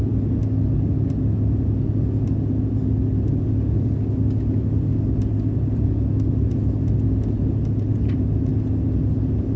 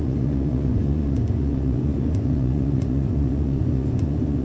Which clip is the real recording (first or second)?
first